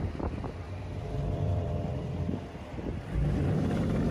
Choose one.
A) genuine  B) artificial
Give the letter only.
B